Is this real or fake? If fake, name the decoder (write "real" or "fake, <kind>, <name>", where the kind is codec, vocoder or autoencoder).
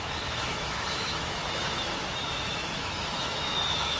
fake, autoencoder, DAC-VAE